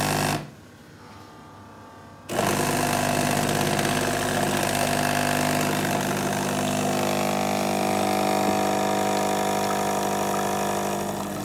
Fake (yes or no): no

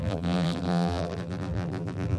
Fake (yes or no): yes